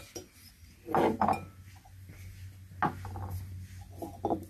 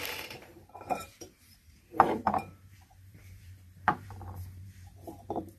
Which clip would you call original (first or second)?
first